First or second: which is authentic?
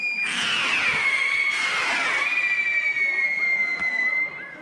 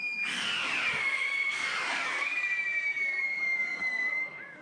first